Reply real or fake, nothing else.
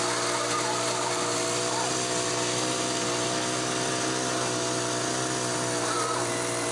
real